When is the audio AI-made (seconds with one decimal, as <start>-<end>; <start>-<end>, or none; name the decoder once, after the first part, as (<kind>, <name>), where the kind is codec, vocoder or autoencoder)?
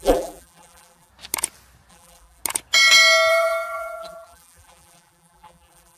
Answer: 0.0-1.1 (vocoder, BigVGAN v2); 1.9-2.4; 3.3-6.0